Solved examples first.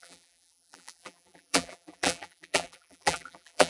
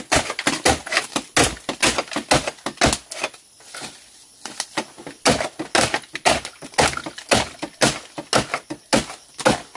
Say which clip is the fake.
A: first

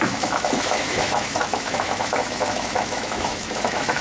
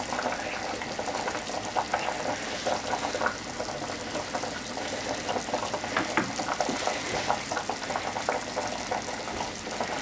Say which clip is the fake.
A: first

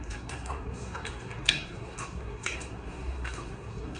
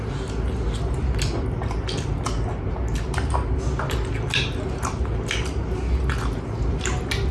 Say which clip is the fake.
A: first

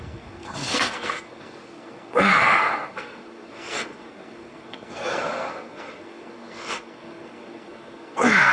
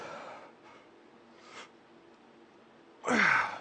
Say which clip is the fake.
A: first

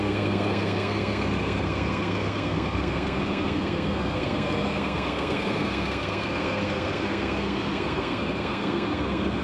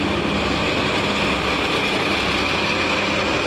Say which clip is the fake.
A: first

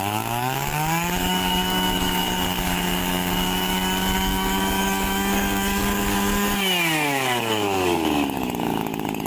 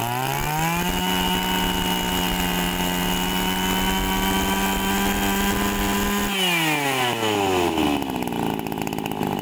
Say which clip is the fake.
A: first